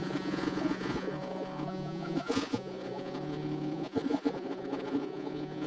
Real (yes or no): no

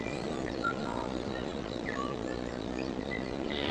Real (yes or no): no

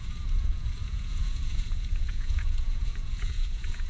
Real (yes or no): no